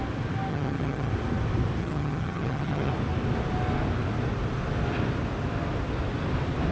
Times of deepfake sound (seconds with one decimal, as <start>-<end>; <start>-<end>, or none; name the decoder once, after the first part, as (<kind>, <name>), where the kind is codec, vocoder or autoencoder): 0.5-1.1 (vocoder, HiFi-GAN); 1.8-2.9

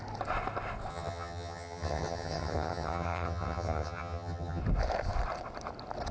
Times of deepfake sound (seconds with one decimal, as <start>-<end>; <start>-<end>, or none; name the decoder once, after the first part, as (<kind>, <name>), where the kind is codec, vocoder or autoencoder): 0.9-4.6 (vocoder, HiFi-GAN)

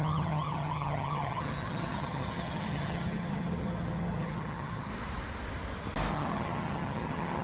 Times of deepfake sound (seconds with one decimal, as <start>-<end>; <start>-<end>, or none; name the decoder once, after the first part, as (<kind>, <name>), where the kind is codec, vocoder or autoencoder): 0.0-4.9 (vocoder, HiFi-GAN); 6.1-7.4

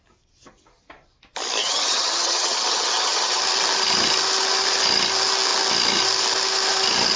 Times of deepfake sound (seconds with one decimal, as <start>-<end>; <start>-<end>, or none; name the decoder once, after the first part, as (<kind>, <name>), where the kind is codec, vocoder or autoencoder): 1.6-3.4 (vocoder, HiFi-GAN)